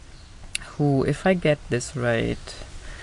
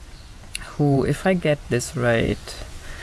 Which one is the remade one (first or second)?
second